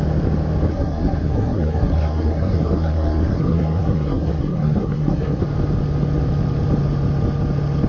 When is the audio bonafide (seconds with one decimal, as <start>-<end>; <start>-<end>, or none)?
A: 0.0-0.7; 5.4-7.9